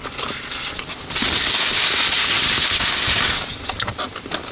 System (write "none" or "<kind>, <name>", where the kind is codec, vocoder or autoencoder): none